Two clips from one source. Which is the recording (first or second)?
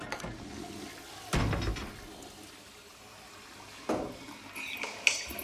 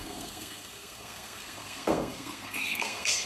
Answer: first